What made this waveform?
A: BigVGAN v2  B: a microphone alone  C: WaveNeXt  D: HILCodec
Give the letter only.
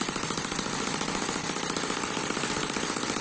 A